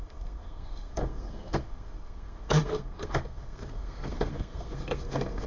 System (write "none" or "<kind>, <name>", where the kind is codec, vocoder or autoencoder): codec, SNAC